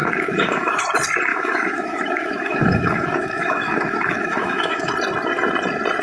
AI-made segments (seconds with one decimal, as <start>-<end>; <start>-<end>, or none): 0.0-0.8; 1.3-4.9